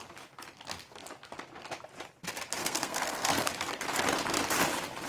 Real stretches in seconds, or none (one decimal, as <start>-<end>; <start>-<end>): 0.0-2.6; 3.5-5.1